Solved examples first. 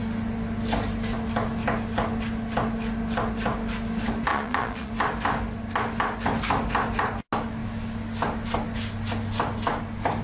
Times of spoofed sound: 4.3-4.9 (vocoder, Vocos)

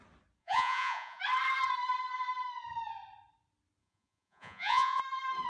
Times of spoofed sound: 0.4-1.2 (vocoder, Vocos); 3.8-5.0

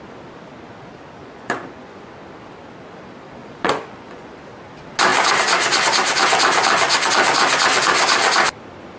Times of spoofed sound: 1.2-2.1 (vocoder, Vocos); 3.4-4.3